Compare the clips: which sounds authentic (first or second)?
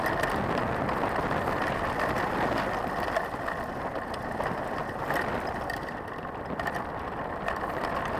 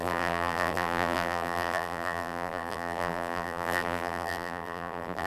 first